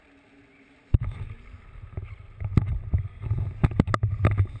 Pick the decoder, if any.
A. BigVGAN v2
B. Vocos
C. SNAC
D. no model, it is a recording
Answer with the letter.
D